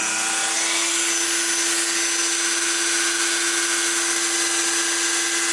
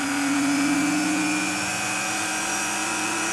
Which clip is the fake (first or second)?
second